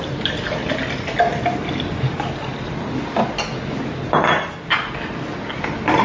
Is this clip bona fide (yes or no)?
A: yes